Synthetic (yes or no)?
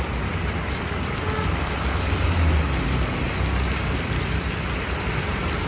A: no